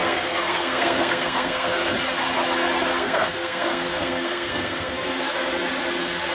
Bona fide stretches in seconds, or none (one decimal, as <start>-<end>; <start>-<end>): 1.9-2.9; 5.5-6.3

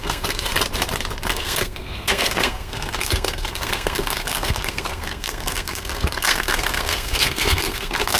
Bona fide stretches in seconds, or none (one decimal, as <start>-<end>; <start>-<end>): 0.5-1.3

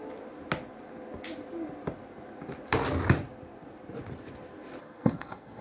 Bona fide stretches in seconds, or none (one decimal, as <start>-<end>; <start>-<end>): 0.0-4.8

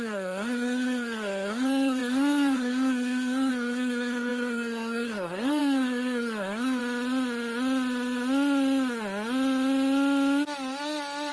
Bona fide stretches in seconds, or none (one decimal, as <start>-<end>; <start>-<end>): 6.8-11.3

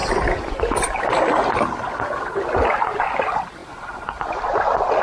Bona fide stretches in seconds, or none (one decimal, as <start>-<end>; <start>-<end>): 0.0-5.0